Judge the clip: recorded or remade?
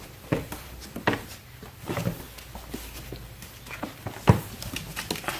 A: recorded